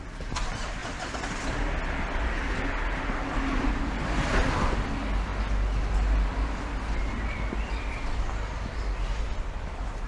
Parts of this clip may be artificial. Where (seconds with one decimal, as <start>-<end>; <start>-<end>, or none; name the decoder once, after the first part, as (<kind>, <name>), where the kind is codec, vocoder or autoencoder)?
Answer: none